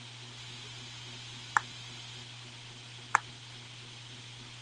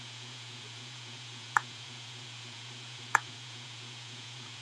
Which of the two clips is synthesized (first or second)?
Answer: second